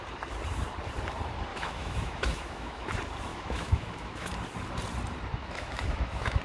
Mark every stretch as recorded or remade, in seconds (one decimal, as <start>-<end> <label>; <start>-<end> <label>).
0.0-1.5 recorded; 1.5-2.9 remade; 2.9-3.3 recorded; 3.3-4.3 remade; 4.3-5.4 recorded; 5.4-6.4 remade